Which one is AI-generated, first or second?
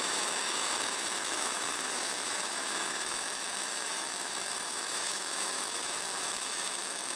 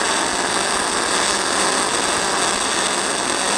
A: first